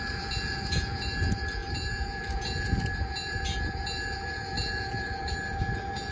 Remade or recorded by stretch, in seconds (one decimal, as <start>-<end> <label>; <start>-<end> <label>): 0.0-6.1 remade

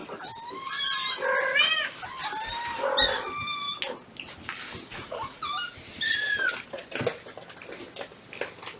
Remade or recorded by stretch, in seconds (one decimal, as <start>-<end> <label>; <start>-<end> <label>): 0.0-4.9 recorded; 4.9-5.5 remade; 5.5-8.8 recorded

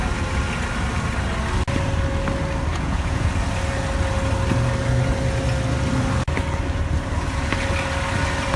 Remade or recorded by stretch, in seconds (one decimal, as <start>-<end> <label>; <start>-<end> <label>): 0.0-2.7 recorded; 2.7-3.3 remade; 3.3-8.6 recorded